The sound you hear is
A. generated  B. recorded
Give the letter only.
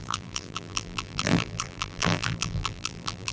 A